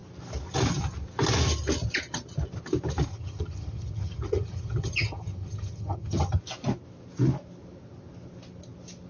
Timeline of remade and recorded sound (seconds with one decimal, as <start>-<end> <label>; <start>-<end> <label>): 0.0-3.1 recorded; 3.1-6.4 remade; 6.4-9.1 recorded